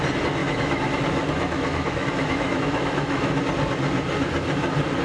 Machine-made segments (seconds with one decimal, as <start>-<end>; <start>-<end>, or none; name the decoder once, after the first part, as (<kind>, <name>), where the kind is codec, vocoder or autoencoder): 0.4-3.4 (autoencoder, DAC-VAE)